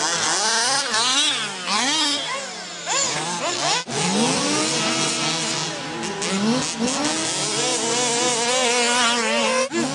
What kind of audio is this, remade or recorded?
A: recorded